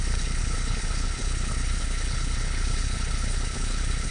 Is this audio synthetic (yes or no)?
yes